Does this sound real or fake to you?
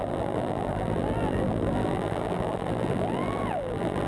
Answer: fake